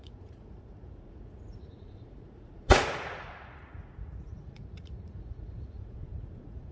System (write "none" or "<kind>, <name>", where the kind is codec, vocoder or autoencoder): vocoder, Vocos